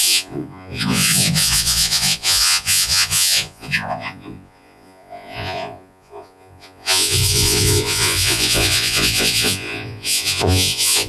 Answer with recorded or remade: remade